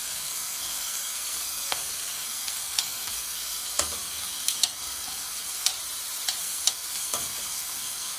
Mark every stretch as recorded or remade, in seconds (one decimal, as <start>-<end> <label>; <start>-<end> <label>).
0.0-5.7 remade; 5.7-6.4 recorded; 6.4-8.2 remade